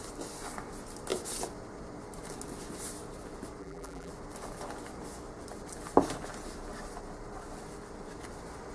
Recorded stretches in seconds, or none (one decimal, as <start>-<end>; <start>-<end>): 0.0-3.6; 4.1-8.7